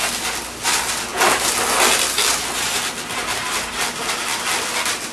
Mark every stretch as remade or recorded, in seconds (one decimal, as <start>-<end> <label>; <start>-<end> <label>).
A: 0.0-5.1 recorded